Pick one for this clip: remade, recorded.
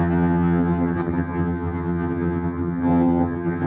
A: remade